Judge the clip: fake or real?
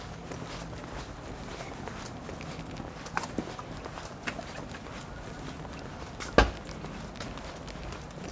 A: real